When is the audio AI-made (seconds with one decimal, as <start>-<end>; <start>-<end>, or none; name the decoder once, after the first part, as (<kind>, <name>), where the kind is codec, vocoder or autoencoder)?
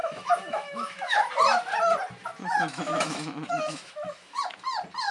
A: 0.0-1.3 (autoencoder, DAC-VAE); 2.4-4.4